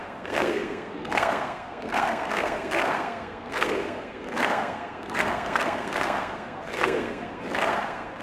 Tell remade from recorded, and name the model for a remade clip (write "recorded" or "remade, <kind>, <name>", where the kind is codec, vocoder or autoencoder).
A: remade, codec, SNAC